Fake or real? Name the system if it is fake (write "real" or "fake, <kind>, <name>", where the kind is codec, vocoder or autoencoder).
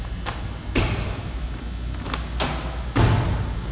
real